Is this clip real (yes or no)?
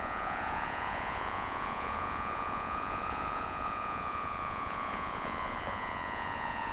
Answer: no